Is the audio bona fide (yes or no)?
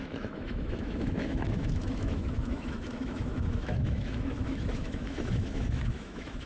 no